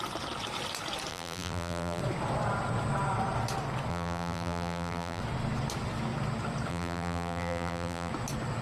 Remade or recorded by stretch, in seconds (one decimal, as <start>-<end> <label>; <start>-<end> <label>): 0.0-1.1 recorded; 1.1-2.0 remade; 2.0-3.9 recorded; 3.9-5.2 remade; 5.2-6.7 recorded; 6.7-8.1 remade; 8.1-8.6 recorded